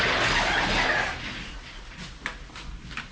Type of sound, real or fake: real